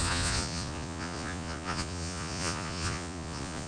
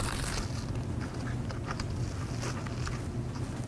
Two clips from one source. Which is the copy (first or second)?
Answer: first